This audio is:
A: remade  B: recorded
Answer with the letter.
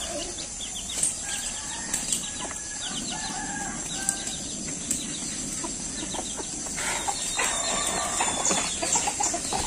B